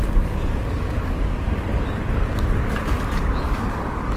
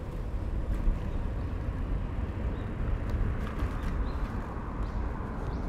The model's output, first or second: first